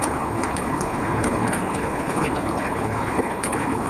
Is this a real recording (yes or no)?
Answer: no